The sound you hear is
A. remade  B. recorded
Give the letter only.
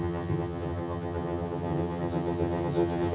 A